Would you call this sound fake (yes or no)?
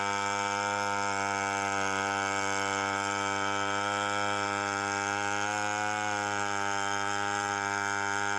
no